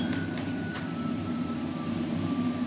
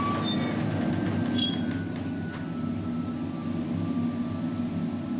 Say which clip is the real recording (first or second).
second